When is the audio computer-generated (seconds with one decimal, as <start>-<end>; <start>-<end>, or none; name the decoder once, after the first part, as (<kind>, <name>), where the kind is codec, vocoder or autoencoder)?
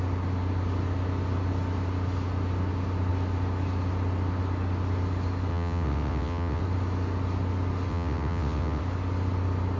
5.5-6.6 (vocoder, WaveNeXt); 7.9-8.8